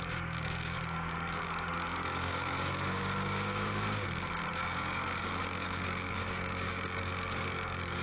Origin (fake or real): fake